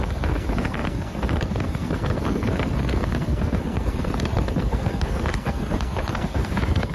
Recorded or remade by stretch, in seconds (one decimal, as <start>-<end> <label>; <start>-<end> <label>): 0.0-6.9 remade